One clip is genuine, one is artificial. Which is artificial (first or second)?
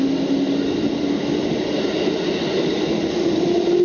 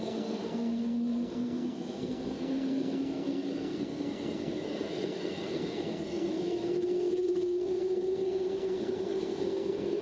second